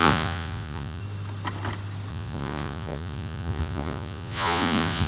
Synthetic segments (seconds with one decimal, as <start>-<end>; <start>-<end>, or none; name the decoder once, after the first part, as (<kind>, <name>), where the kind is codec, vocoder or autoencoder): 0.0-1.0 (vocoder, Vocos); 2.1-5.1